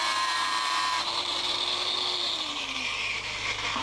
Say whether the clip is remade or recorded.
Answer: remade